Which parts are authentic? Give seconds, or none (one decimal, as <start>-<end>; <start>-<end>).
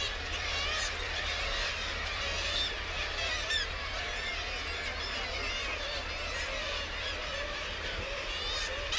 4.3-5.0; 6.0-6.6